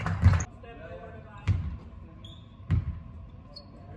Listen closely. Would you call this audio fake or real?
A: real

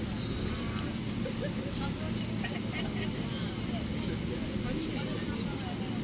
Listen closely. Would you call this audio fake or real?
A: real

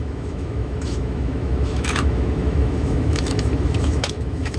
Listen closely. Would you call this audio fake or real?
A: fake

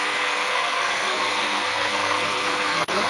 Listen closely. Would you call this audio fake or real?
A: fake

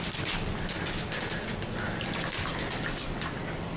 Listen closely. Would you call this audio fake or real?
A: real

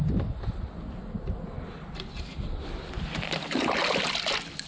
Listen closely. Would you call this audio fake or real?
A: real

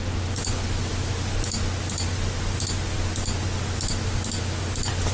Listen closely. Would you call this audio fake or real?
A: real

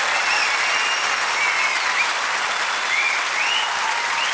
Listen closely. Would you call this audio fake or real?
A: real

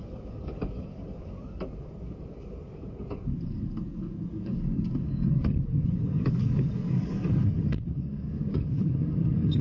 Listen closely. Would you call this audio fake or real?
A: fake